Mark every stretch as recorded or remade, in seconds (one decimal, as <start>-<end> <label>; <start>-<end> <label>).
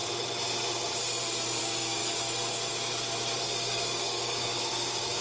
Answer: 0.0-1.6 recorded; 1.6-2.0 remade; 2.0-3.4 recorded; 3.4-5.2 remade